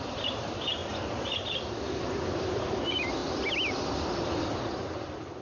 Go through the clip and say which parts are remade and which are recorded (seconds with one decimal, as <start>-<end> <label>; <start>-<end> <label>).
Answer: 0.0-0.8 remade; 0.8-2.5 recorded; 2.5-3.2 remade; 3.2-4.5 recorded; 4.5-5.4 remade